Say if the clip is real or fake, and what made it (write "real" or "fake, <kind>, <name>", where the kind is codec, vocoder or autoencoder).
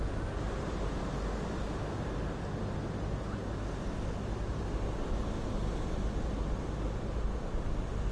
real